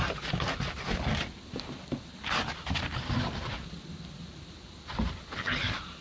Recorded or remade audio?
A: recorded